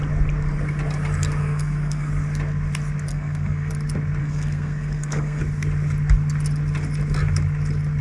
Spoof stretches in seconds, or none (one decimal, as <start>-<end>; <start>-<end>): 1.4-2.1; 3.1-3.7; 4.2-5.4